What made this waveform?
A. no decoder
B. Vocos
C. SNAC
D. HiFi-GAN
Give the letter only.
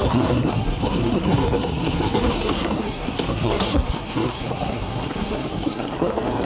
C